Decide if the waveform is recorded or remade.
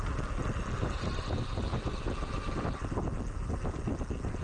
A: recorded